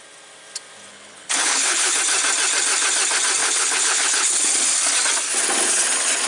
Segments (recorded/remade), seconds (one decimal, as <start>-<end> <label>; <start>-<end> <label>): 0.0-0.9 recorded; 0.9-2.0 remade; 2.0-3.4 recorded; 3.4-4.5 remade; 4.5-6.3 recorded